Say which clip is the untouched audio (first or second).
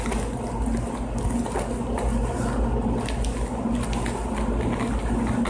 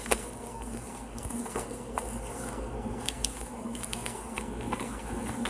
first